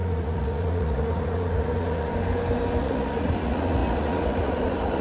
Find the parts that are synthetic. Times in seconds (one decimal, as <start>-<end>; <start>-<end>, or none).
0.0-2.1; 2.8-5.0